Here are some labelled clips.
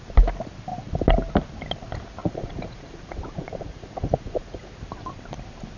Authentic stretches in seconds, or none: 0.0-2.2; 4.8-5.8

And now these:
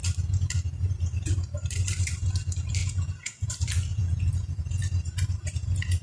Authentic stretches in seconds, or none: 0.0-2.8; 3.5-3.9; 4.6-6.0

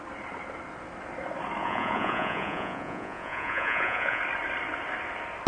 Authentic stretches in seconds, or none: 0.0-1.6; 4.2-5.5